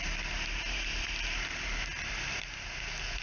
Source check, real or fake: real